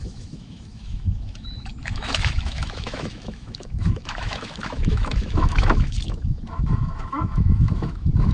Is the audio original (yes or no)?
no